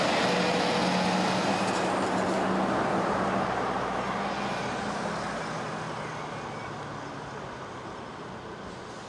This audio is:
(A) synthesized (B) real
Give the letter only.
B